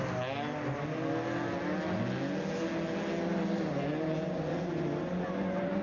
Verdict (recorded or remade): recorded